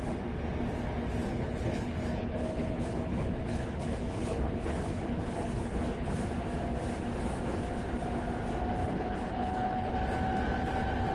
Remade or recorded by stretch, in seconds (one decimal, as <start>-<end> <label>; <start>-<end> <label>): 0.0-1.2 recorded; 1.2-6.2 remade; 6.2-8.8 recorded; 8.8-9.9 remade; 9.9-11.1 recorded